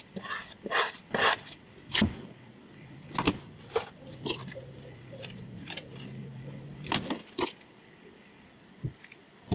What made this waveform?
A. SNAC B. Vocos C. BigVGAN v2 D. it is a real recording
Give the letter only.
D